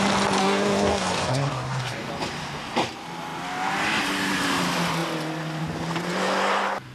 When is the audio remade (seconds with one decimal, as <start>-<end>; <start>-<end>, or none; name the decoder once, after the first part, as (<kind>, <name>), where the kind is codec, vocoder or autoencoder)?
0.4-2.1 (codec, DAC)